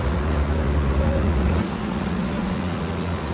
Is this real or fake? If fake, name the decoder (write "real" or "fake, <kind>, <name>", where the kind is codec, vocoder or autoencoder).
fake, vocoder, Vocos